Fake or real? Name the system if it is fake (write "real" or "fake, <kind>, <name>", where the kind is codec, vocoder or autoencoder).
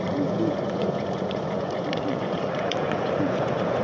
fake, vocoder, Vocos